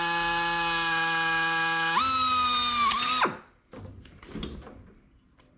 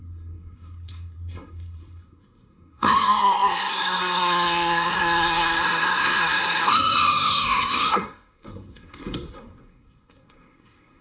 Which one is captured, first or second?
first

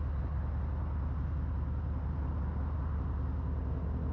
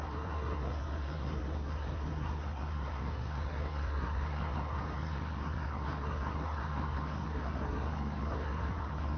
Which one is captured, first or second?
first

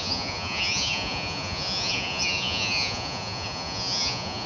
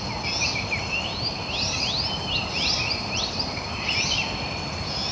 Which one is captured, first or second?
second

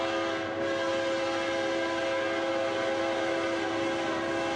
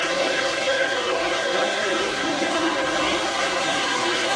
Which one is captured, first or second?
first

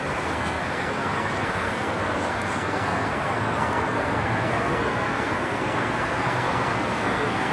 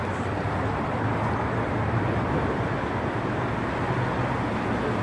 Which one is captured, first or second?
second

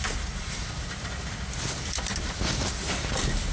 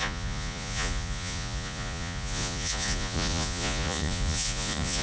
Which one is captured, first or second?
first